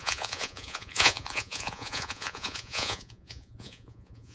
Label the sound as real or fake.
fake